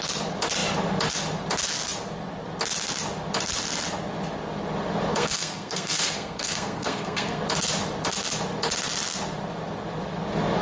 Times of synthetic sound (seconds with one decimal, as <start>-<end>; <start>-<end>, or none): 5.1-7.4